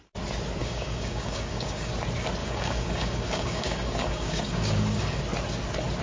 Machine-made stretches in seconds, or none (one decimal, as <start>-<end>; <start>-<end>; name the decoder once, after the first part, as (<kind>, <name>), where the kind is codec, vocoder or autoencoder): 0.6-1.9 (codec, DAC); 2.4-5.2